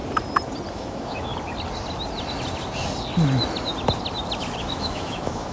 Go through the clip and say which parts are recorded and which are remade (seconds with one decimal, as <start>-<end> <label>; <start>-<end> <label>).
0.0-0.7 recorded; 0.7-1.3 remade; 1.3-4.6 recorded; 4.6-5.5 remade